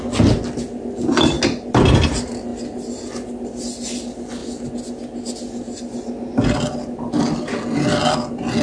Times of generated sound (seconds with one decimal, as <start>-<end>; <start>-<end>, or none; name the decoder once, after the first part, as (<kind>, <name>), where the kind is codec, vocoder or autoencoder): none